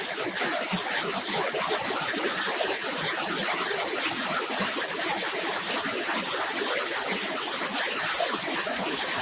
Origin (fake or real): real